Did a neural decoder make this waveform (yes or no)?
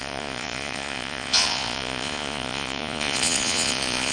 yes